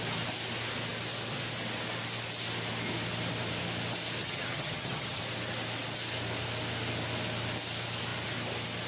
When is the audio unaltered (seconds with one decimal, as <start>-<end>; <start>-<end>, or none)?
0.0-4.2; 5.2-8.9